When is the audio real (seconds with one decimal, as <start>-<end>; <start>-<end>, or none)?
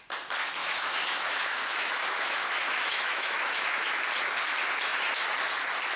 0.0-0.6; 3.9-6.0